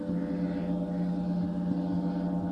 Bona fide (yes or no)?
yes